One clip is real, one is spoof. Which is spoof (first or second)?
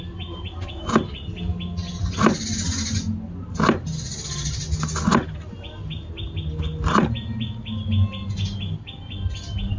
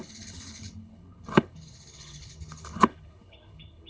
second